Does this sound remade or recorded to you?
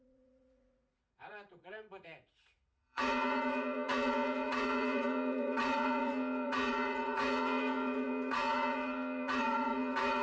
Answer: remade